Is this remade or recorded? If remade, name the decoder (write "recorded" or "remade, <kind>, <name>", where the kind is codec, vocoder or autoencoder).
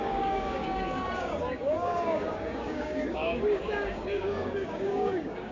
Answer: remade, codec, DAC